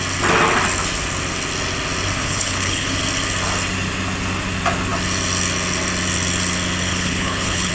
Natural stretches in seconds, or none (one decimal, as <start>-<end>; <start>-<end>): 0.0-2.2; 3.0-6.9